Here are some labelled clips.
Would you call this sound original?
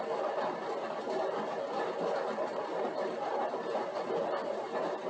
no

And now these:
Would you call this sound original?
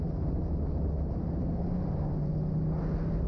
yes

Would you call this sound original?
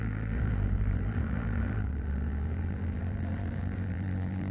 no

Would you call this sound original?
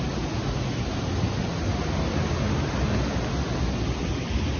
yes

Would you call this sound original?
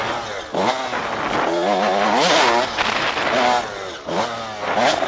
yes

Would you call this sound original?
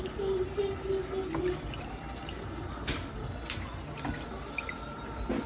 yes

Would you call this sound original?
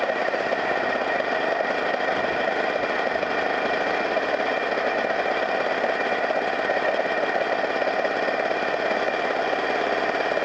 yes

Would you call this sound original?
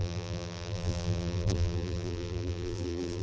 no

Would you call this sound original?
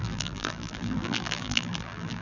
no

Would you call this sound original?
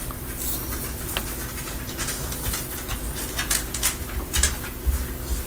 yes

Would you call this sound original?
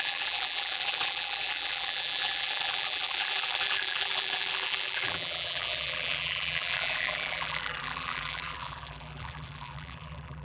no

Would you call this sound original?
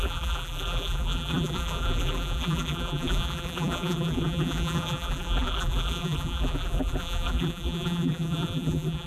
no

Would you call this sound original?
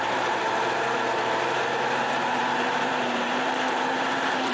no